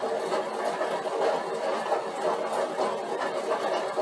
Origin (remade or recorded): recorded